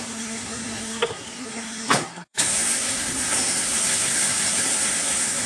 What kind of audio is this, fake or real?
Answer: fake